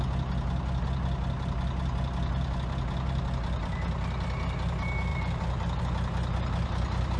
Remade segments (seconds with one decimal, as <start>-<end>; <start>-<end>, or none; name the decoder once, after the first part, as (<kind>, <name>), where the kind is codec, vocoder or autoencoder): 5.1-5.8 (vocoder, BigVGAN v2)